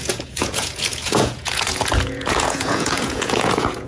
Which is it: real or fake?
fake